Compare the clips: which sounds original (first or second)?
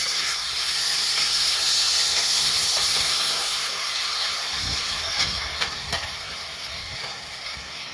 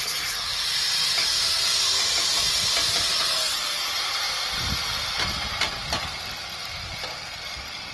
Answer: second